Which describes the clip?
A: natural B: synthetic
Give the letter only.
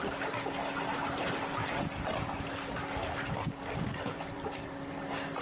A